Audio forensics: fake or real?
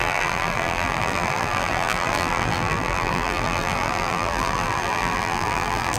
fake